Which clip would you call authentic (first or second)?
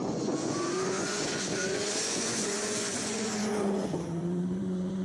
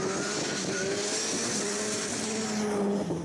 second